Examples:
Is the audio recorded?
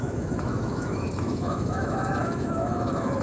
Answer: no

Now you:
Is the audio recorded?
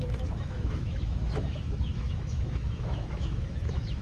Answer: no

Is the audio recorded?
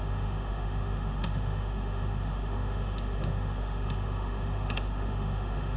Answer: no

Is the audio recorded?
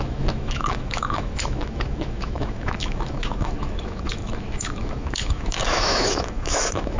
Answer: no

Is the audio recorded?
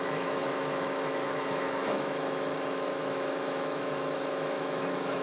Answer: no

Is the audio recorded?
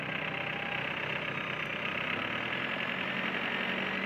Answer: yes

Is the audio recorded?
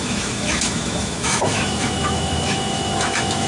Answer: no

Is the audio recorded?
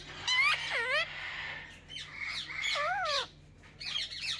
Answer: yes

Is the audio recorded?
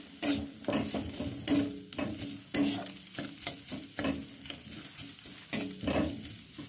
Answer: yes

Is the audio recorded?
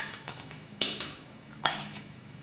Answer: no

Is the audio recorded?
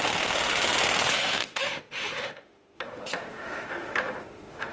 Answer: no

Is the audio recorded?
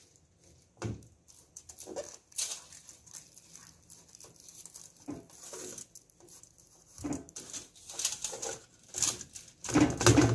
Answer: yes